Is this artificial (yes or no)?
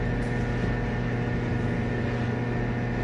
no